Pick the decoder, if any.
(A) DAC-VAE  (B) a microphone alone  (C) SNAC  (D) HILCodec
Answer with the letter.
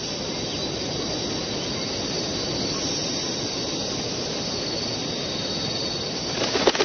B